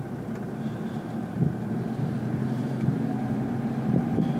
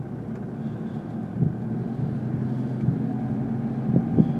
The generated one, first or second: first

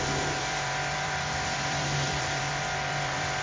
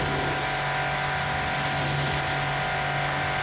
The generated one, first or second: first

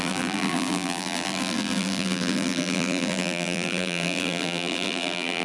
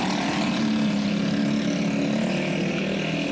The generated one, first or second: first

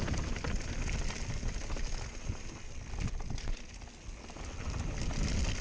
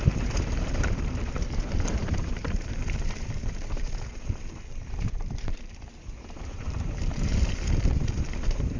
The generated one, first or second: second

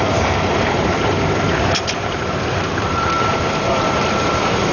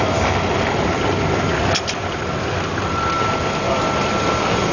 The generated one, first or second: first